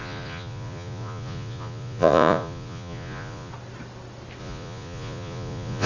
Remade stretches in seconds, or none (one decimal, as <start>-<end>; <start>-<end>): 0.0-3.5; 4.4-5.9